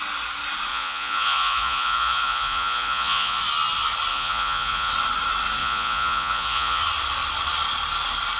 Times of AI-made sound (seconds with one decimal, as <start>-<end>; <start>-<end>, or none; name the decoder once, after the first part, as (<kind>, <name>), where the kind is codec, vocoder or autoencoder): 0.7-3.4 (vocoder, Vocos); 4.1-4.9; 5.6-6.8